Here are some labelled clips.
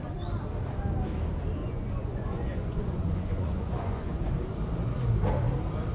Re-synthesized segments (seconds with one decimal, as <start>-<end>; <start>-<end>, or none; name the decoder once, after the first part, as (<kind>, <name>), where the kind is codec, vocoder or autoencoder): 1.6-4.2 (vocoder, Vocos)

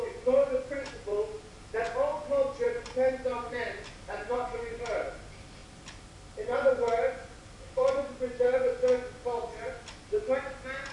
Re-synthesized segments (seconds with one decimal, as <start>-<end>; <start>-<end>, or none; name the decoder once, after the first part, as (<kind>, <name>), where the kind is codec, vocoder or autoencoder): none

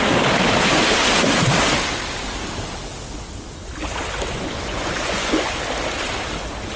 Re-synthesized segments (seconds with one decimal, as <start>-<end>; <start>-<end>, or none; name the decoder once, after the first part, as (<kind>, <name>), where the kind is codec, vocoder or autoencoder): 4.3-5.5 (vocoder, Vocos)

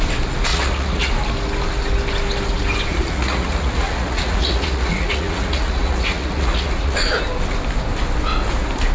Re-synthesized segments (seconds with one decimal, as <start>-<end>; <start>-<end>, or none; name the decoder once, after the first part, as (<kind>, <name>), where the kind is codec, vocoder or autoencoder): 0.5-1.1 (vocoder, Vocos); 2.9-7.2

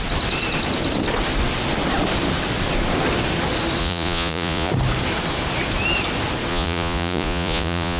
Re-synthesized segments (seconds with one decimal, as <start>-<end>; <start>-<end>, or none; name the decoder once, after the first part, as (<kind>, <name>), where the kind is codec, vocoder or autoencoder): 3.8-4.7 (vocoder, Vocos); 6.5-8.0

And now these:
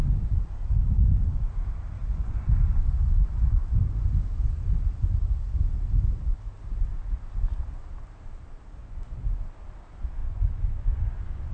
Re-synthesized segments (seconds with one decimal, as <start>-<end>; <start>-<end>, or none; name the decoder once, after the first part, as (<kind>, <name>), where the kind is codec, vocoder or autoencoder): 2.0-2.5 (vocoder, Vocos); 8.8-9.4; 10.2-11.5

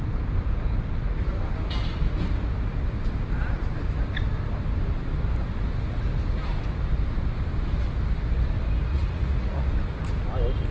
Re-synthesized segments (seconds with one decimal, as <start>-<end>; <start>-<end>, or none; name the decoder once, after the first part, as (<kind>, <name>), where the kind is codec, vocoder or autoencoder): 8.9-9.7 (vocoder, Vocos)

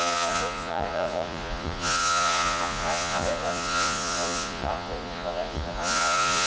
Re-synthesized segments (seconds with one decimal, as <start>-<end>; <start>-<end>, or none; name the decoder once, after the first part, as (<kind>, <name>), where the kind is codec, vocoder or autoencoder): 0.0-6.5 (vocoder, Vocos)